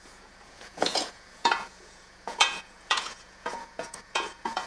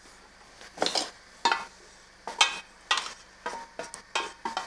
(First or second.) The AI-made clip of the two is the first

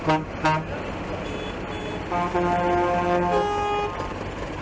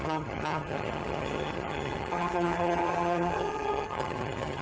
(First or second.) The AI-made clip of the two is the second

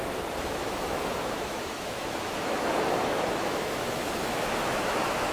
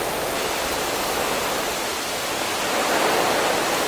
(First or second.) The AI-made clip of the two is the first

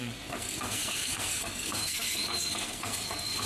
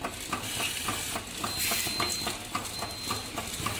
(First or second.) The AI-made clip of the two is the first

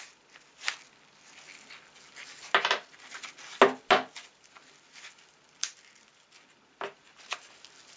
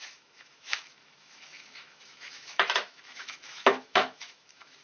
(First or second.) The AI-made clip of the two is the second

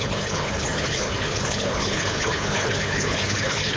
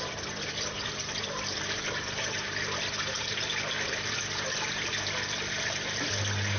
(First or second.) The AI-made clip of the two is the first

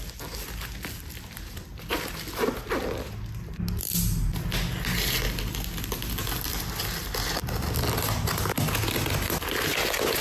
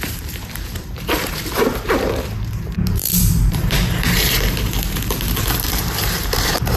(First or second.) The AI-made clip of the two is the second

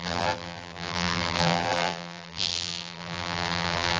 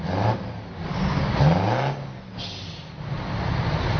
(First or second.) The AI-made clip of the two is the first